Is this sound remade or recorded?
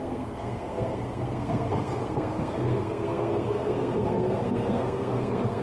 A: remade